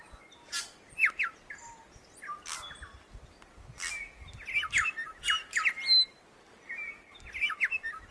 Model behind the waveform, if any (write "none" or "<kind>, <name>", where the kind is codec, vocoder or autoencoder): none